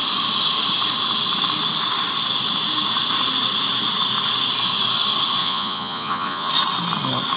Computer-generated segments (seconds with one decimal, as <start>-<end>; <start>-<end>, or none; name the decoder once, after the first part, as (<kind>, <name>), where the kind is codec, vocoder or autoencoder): 5.4-6.5 (vocoder, Vocos)